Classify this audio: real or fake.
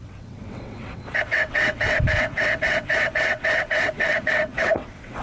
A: fake